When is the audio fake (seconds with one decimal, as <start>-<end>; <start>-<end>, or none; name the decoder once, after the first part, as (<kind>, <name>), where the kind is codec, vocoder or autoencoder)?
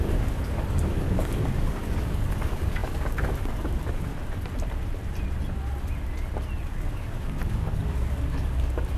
0.0-4.1 (codec, DAC); 6.6-9.0